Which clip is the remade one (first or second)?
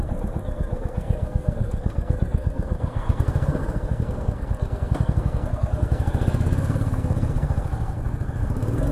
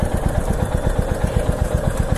first